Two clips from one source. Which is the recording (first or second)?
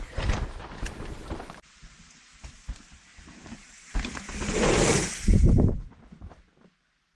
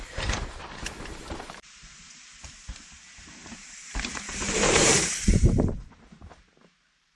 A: first